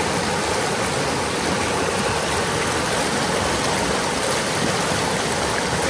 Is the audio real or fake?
real